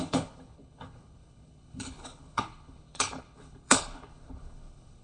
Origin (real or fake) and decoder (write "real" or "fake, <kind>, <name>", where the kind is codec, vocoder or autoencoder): fake, codec, HILCodec